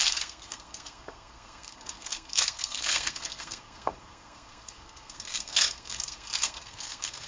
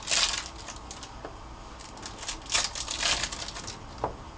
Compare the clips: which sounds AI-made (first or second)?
first